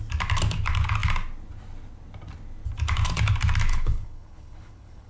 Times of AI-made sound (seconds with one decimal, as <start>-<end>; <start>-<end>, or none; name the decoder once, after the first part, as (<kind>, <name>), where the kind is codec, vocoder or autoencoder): 3.7-5.1 (codec, HILCodec)